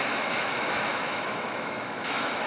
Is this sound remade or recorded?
remade